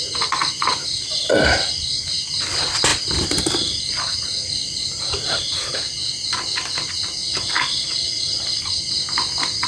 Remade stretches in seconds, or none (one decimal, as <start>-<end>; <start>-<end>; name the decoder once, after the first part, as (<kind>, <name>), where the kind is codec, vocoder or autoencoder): none